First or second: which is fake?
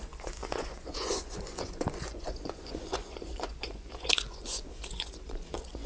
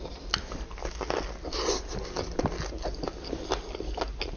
first